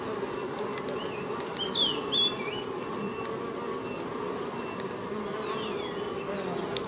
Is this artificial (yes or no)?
no